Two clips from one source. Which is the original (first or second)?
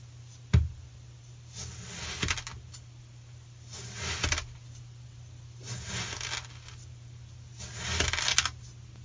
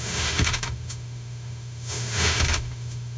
first